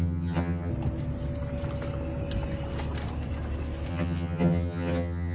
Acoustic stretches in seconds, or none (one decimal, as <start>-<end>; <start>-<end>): 0.7-3.9